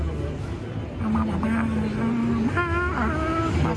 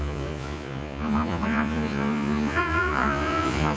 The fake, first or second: second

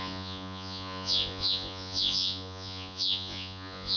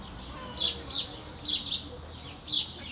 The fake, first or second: first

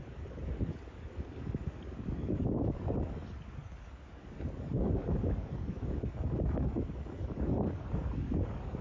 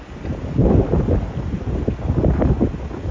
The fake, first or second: first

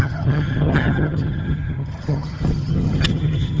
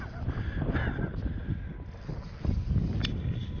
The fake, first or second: first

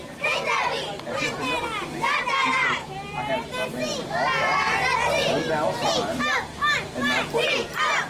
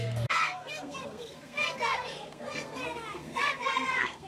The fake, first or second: second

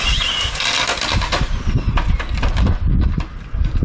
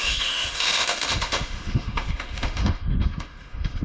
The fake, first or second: second